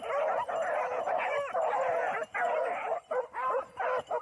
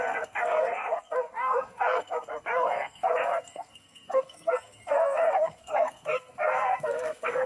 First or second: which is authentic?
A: first